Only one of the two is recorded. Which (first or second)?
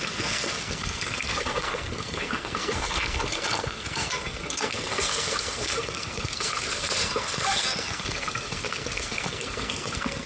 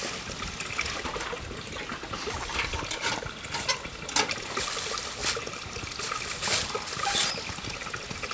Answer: second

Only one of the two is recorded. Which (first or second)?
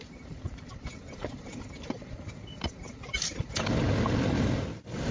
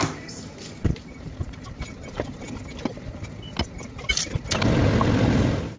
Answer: second